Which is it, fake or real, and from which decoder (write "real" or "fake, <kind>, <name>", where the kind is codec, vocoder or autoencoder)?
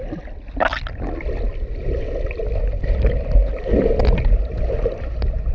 real